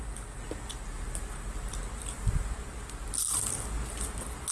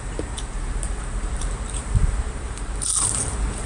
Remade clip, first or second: second